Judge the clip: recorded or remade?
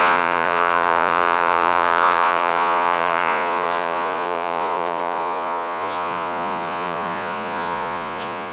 remade